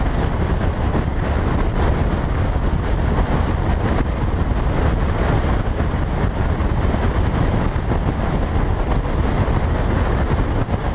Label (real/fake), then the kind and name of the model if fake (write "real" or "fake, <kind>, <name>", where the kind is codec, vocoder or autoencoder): real